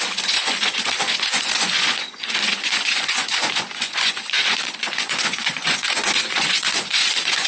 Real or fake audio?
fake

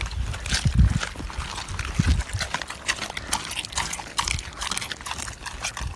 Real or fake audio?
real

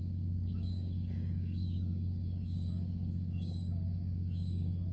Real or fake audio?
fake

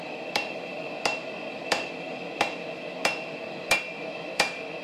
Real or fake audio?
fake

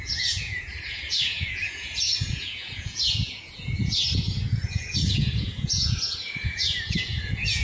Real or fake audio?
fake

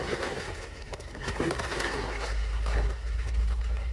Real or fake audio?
fake